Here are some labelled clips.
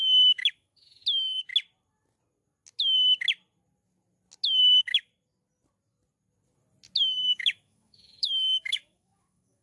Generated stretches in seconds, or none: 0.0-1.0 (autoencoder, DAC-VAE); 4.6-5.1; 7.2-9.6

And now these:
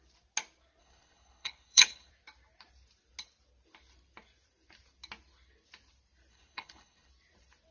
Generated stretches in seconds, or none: 0.8-2.1 (codec, HILCodec); 6.3-7.1

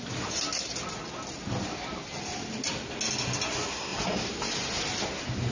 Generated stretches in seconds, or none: none

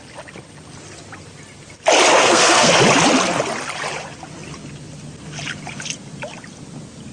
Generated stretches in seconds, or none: 2.2-2.7 (codec, SNAC)